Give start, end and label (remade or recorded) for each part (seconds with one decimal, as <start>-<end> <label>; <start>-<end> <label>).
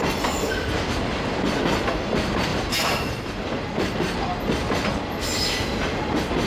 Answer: 0.0-2.5 recorded; 2.5-3.4 remade; 3.4-6.5 recorded